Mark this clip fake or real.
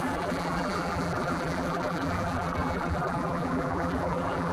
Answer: fake